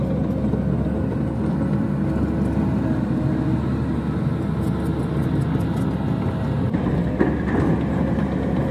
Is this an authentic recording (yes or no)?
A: yes